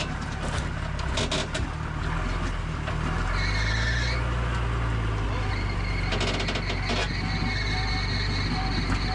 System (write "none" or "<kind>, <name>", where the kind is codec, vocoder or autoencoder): none